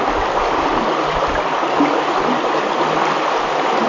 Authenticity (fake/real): real